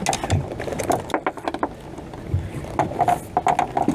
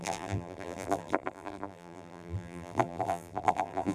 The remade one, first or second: second